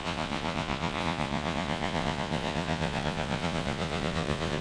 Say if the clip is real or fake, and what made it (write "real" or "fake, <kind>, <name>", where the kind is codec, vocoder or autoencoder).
fake, vocoder, Vocos